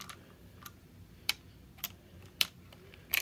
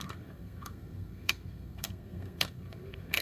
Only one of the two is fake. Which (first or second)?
second